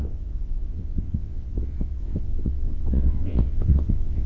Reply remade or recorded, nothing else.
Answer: remade